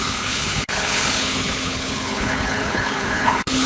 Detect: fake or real fake